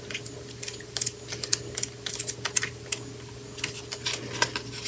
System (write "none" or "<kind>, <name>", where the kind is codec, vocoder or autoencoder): none